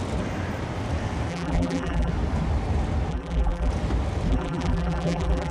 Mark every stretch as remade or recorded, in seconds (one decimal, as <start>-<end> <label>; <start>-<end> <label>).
0.0-1.3 recorded; 1.3-2.1 remade; 2.1-3.1 recorded; 3.1-3.7 remade; 3.7-4.3 recorded; 4.3-5.5 remade